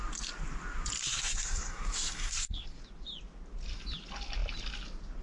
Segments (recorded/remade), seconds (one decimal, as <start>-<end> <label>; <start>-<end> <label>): 0.0-1.0 recorded; 1.0-2.8 remade; 2.8-5.2 recorded

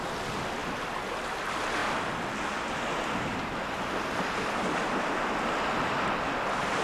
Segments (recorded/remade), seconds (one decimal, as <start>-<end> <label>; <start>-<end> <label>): 0.0-6.8 recorded